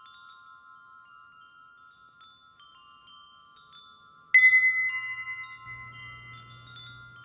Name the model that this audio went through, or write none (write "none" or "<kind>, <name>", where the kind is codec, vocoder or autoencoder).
none